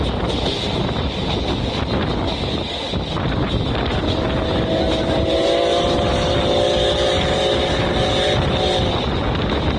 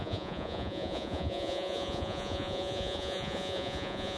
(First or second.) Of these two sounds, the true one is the first